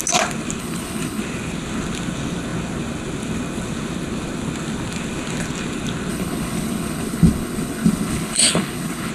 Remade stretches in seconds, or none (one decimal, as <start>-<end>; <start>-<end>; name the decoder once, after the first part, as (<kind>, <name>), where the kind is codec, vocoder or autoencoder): 0.6-1.2 (codec, HILCodec); 6.1-9.1

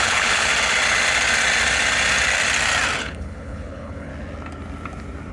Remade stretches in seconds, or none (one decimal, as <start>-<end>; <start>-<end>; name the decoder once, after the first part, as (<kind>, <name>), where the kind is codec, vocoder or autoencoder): 0.0-0.5 (codec, HILCodec); 3.0-4.1

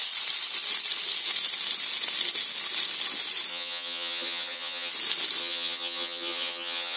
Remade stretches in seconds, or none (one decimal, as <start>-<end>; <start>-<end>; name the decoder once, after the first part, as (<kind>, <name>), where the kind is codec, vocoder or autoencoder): 3.5-4.9 (vocoder, HiFi-GAN); 5.4-7.0

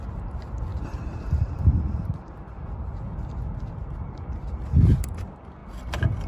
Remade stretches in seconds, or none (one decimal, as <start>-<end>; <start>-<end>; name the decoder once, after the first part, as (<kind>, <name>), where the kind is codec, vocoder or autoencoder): 0.7-3.1 (vocoder, BigVGAN v2)

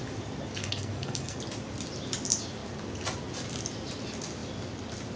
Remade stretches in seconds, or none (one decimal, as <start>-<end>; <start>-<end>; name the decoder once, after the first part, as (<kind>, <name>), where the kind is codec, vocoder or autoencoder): 0.6-1.4 (codec, SNAC)

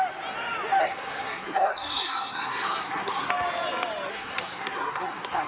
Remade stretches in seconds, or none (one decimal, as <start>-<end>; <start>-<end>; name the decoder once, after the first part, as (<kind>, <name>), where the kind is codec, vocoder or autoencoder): 0.8-3.3 (codec, SNAC); 4.1-5.5

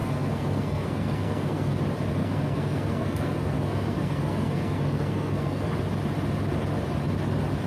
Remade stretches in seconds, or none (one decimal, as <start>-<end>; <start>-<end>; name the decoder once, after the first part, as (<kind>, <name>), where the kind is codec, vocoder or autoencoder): 0.0-1.8 (codec, SNAC); 2.2-5.7